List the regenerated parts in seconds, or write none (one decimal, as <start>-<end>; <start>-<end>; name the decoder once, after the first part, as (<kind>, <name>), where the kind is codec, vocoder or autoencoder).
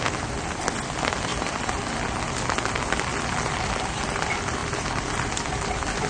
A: none